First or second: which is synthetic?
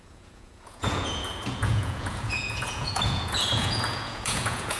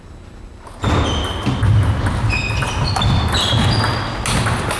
first